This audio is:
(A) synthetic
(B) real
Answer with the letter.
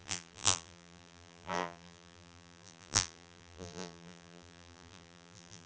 A